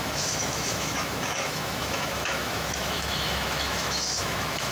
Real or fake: fake